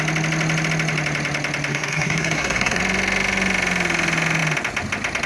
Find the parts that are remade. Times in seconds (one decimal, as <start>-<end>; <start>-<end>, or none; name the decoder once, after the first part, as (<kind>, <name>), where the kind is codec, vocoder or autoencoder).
1.7-2.8 (codec, SNAC)